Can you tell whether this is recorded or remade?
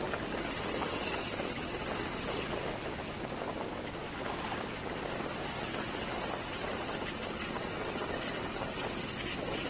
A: recorded